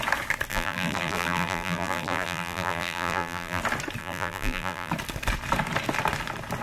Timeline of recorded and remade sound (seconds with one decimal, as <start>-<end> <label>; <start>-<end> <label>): 0.0-0.5 recorded; 0.5-3.6 remade; 3.6-4.0 recorded; 4.0-4.9 remade; 4.9-6.6 recorded